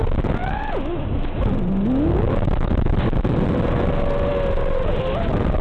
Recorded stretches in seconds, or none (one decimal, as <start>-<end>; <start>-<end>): 0.0-0.4; 2.9-5.6